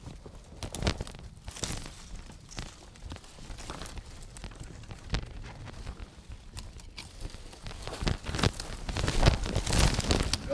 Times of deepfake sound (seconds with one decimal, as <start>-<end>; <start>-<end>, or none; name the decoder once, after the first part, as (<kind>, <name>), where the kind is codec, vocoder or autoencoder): none